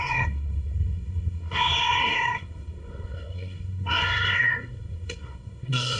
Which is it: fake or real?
fake